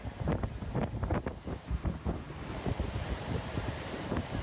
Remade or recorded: remade